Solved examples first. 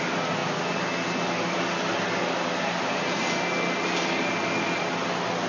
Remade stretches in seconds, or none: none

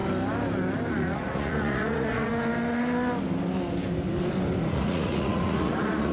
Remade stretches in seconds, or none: 0.9-2.3 (vocoder, Vocos); 4.7-6.1

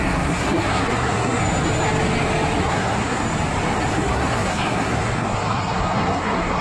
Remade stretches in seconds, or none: 0.0-1.4 (codec, SNAC); 2.6-3.2; 3.9-6.6

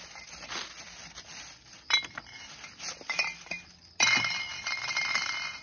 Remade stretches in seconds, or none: none